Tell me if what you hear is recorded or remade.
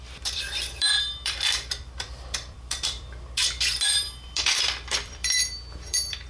remade